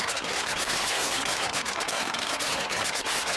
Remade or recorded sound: remade